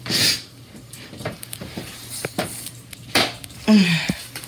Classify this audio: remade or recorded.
remade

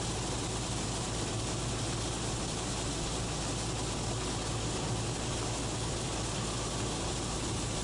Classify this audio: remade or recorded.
recorded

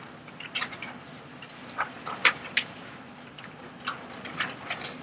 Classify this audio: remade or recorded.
recorded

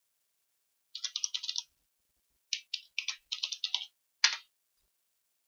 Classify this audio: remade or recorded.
recorded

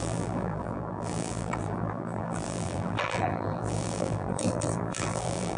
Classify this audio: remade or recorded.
remade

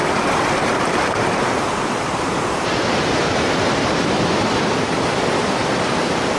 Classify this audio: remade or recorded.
remade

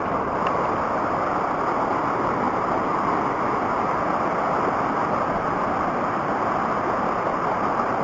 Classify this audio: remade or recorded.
recorded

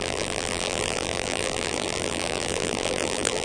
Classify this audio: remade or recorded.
remade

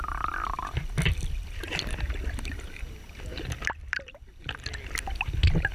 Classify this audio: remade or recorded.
recorded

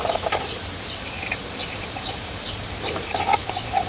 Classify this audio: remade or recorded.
remade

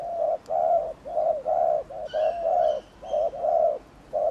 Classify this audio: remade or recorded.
recorded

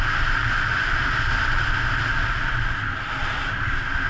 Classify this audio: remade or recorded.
recorded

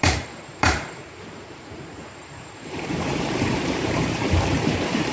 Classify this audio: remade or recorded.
remade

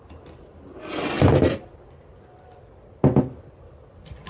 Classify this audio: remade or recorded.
recorded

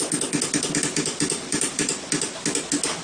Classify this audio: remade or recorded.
recorded